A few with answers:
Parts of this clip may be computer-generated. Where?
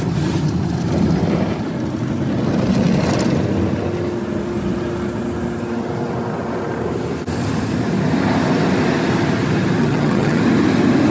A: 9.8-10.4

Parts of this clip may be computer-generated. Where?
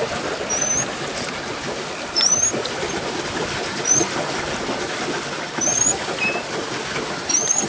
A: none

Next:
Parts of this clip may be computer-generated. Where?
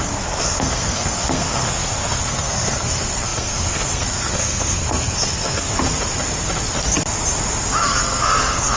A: 0.0-5.7; 7.8-8.8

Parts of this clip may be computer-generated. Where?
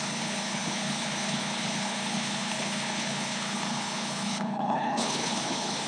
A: 0.0-5.9